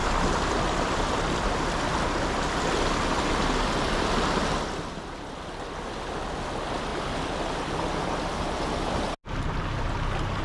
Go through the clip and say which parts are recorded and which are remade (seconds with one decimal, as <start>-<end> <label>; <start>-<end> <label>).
0.0-1.5 remade; 1.5-6.9 recorded; 6.9-9.1 remade; 9.1-10.4 recorded